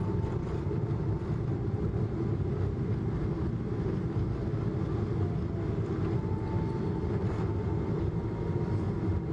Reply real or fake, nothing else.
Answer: real